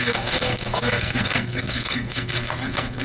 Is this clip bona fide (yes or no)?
no